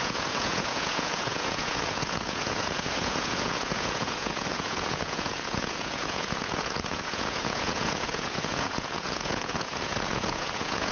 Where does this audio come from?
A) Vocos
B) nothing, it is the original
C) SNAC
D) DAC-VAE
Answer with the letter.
A